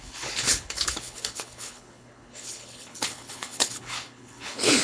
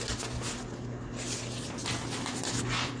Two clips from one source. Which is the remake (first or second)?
first